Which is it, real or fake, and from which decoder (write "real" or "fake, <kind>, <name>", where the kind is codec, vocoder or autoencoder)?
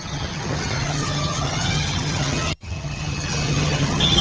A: fake, vocoder, HiFi-GAN